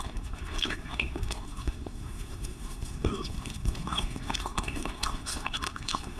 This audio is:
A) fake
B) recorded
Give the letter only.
A